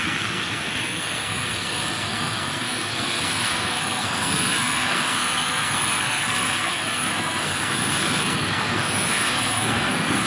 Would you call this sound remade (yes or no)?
yes